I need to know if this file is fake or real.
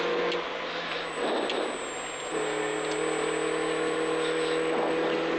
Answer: real